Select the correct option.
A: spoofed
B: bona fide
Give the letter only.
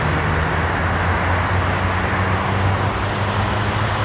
B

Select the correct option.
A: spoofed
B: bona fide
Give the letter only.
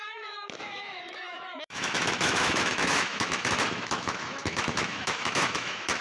A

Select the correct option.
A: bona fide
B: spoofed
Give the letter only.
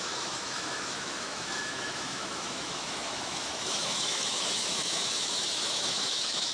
B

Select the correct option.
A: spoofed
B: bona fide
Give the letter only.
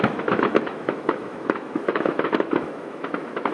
A